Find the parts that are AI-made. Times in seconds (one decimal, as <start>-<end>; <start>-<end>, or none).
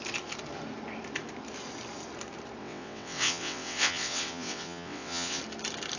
2.6-5.4